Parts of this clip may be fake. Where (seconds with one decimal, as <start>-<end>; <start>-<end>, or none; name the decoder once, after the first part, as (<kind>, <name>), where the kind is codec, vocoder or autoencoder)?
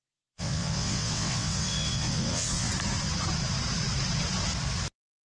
0.0-2.7 (vocoder, WaveNeXt)